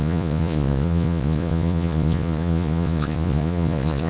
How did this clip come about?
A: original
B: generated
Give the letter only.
B